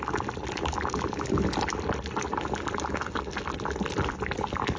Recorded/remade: recorded